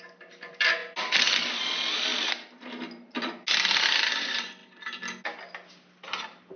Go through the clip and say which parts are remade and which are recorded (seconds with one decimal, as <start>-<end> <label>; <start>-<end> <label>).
0.0-6.6 recorded